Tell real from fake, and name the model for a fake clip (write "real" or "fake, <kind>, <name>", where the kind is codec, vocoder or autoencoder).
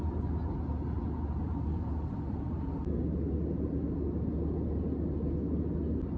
real